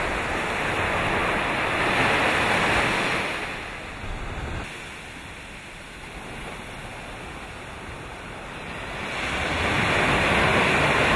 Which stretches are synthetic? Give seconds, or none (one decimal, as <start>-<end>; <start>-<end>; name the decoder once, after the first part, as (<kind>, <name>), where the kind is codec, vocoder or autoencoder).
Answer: 10.5-11.2 (vocoder, BigVGAN v2)